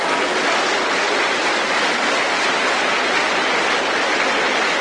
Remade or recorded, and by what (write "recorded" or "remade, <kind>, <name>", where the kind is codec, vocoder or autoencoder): recorded